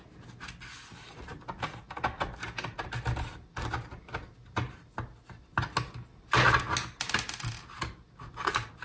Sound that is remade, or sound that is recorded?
recorded